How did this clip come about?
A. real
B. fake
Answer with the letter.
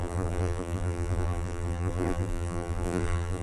B